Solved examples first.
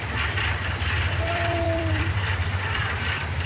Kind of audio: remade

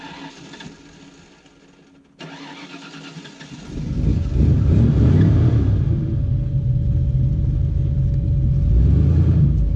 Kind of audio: recorded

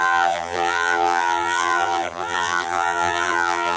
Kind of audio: remade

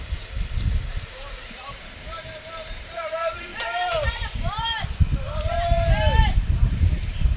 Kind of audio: remade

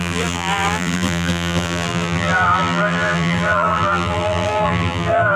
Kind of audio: remade